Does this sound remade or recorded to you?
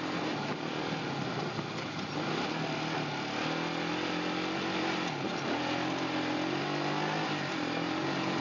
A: recorded